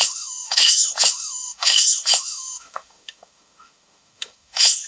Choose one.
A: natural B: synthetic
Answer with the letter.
B